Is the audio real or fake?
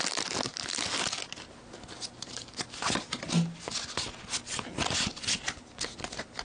real